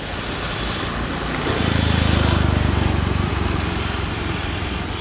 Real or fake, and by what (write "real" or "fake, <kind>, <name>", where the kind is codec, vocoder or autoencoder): real